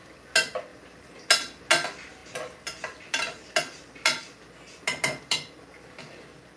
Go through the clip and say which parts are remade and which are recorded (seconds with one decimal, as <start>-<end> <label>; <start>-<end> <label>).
0.0-6.6 recorded

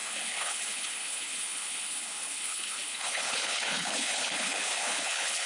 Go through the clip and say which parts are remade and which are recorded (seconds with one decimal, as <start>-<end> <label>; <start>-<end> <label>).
0.0-5.5 remade

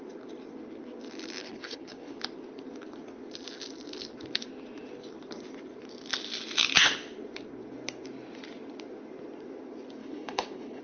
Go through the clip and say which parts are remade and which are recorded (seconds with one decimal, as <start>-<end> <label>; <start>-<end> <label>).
0.0-1.4 recorded; 1.4-2.2 remade; 2.2-10.0 recorded; 10.0-10.8 remade

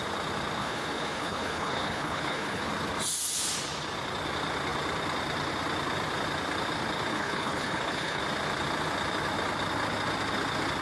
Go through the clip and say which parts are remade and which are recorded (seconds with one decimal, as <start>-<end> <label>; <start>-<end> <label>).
0.0-0.6 recorded; 0.6-2.7 remade; 2.7-7.1 recorded; 7.1-8.2 remade; 8.2-10.8 recorded

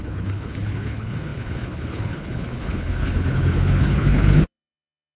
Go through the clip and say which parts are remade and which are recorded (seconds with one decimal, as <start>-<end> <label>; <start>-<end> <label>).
0.0-5.2 remade

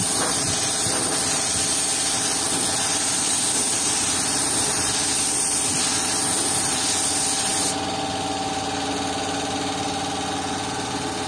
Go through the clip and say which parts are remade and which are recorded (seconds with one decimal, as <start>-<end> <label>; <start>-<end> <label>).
0.0-11.3 recorded

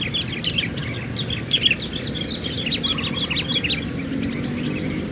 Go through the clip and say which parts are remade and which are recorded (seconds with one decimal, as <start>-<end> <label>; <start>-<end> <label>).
0.0-5.1 recorded